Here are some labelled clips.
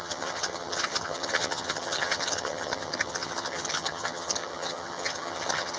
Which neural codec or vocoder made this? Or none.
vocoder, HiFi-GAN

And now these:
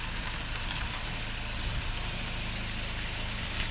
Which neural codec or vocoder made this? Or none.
none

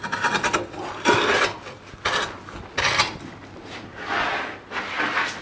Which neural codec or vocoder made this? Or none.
none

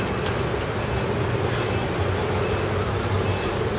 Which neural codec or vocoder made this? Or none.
none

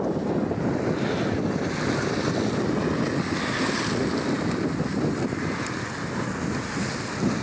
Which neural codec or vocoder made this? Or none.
none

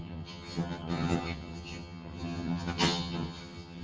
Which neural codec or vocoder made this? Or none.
vocoder, HiFi-GAN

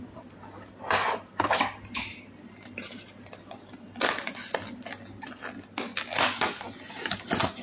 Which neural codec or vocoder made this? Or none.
none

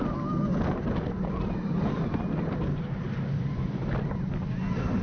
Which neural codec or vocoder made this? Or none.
none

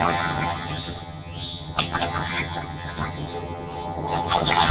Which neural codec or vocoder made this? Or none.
vocoder, HiFi-GAN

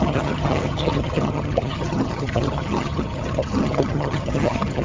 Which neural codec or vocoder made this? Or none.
vocoder, HiFi-GAN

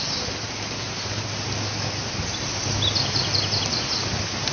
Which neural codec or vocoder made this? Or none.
none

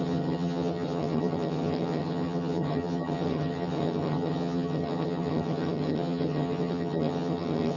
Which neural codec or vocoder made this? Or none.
vocoder, HiFi-GAN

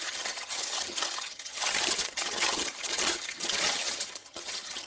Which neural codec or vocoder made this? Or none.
vocoder, HiFi-GAN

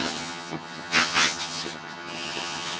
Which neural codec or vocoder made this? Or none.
vocoder, HiFi-GAN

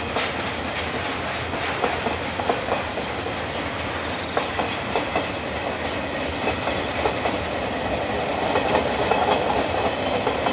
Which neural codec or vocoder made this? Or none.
none